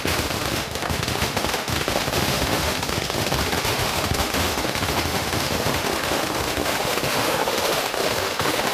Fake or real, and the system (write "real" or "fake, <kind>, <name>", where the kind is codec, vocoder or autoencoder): fake, autoencoder, DAC-VAE